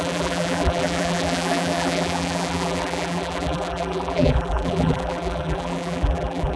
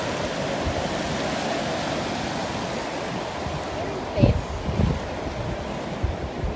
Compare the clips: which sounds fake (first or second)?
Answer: first